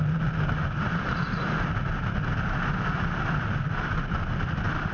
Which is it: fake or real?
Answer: real